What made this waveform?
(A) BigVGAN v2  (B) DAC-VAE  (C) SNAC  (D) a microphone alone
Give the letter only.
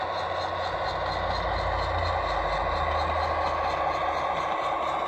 D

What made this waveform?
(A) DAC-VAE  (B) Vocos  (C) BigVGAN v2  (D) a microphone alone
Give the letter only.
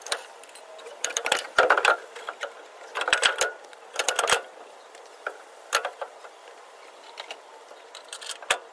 C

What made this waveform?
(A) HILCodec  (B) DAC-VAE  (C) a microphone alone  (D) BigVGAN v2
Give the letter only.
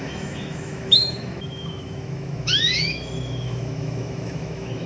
B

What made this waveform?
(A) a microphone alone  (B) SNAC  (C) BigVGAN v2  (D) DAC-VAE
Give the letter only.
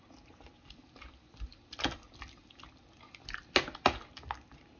A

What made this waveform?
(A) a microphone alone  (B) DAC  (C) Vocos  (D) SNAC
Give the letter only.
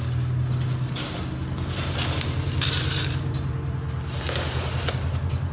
A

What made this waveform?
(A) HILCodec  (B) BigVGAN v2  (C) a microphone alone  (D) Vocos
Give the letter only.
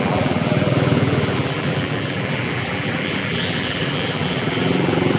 B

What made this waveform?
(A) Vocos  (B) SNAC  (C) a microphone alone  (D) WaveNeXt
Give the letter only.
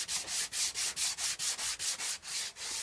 C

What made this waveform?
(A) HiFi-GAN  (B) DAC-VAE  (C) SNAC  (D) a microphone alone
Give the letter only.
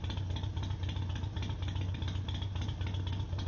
D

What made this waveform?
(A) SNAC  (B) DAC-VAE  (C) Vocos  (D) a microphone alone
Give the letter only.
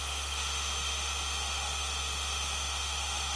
B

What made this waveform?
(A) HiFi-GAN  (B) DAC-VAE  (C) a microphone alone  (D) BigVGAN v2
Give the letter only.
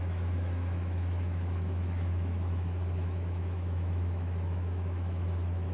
B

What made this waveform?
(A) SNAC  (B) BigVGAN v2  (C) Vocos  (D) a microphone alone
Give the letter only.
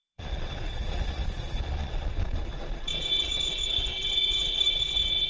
C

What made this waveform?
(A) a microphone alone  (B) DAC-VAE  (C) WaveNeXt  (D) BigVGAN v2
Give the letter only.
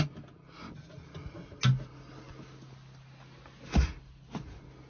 A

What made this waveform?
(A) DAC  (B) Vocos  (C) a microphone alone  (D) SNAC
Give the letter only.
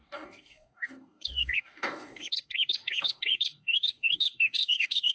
A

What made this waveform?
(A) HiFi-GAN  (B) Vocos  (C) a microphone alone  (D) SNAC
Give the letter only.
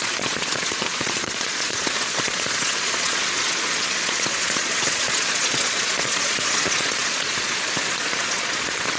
B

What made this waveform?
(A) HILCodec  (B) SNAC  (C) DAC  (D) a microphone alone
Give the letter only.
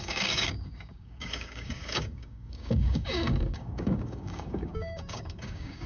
C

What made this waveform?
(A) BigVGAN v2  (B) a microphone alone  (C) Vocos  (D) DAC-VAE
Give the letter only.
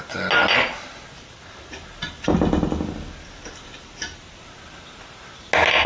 B